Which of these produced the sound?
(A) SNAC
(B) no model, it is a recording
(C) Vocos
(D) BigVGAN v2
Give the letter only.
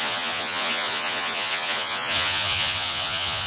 C